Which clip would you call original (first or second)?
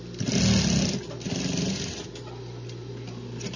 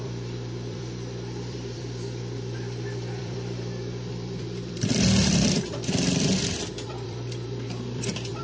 first